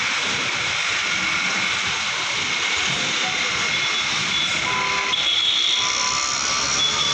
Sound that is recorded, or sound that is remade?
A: recorded